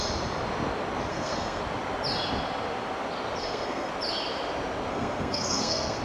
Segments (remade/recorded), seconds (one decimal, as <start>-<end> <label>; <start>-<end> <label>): 0.0-1.1 recorded; 1.1-1.6 remade; 1.6-3.4 recorded; 3.4-3.9 remade; 3.9-4.9 recorded; 4.9-6.0 remade